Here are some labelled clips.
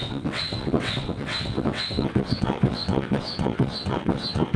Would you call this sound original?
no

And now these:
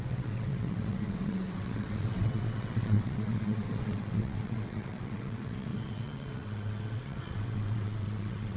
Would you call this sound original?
no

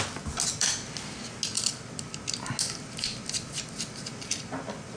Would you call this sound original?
yes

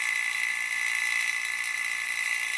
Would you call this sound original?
yes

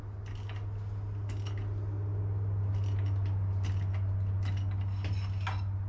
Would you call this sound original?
yes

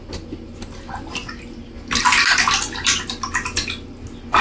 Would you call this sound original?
yes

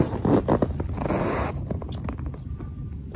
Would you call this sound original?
yes